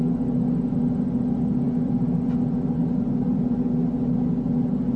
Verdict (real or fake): real